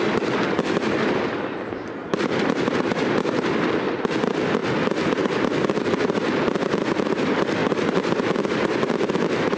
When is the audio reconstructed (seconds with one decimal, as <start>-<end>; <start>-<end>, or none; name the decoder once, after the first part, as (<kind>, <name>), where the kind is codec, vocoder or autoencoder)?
none